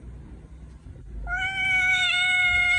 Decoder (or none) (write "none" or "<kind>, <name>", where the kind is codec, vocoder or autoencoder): vocoder, BigVGAN v2